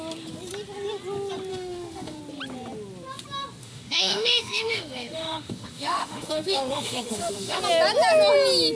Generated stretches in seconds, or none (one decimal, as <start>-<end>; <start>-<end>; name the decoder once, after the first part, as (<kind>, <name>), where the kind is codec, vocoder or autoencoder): 1.5-2.2 (autoencoder, DAC-VAE); 3.6-7.6

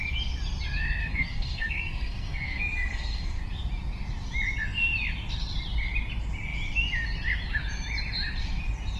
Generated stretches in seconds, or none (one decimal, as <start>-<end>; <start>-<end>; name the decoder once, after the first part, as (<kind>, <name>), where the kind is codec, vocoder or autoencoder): 1.0-3.4 (codec, SNAC)

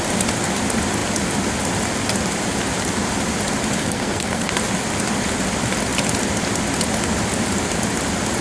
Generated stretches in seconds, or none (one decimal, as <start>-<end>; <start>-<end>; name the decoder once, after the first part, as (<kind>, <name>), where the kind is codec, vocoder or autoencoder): 3.8-4.5 (codec, SNAC)

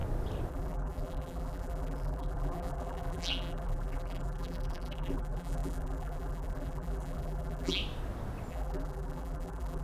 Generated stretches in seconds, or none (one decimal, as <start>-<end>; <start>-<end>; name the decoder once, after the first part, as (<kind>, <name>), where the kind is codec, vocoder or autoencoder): 0.5-7.8 (vocoder, BigVGAN v2); 8.5-9.8

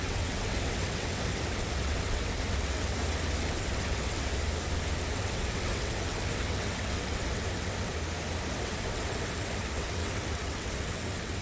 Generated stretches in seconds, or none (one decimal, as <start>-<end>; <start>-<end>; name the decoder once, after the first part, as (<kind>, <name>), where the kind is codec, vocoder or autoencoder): 0.0-3.0 (vocoder, WaveNeXt); 3.5-4.3; 5.1-7.9; 8.5-11.4

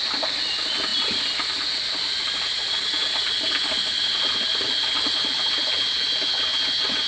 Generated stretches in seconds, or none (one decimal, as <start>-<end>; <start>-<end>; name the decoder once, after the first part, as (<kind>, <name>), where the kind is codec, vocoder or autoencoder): none